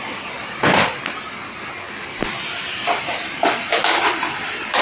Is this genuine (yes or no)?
yes